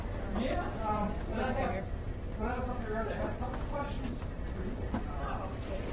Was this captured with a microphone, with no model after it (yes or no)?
no